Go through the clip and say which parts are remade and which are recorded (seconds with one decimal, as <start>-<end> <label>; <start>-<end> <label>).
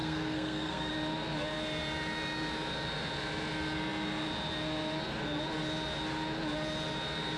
0.0-0.9 remade; 0.9-7.4 recorded